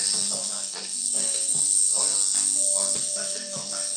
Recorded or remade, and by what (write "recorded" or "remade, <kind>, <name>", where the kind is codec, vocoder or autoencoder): remade, codec, SNAC